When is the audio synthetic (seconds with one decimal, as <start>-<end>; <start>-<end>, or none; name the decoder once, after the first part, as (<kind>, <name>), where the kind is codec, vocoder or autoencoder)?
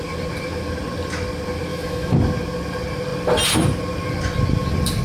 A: 1.7-2.2 (autoencoder, DAC-VAE)